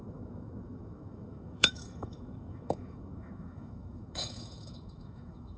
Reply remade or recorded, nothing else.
remade